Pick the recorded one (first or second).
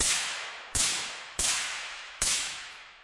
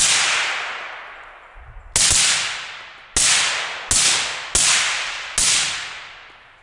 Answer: second